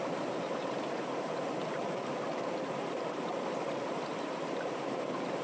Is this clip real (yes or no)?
yes